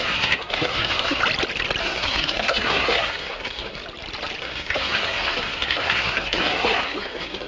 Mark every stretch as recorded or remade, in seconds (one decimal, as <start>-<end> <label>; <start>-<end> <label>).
0.0-1.2 remade; 1.2-1.8 recorded; 1.8-3.8 remade; 3.8-4.4 recorded; 4.4-7.5 remade